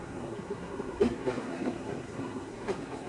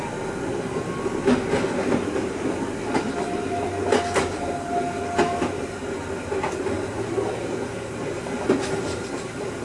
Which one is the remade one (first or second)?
first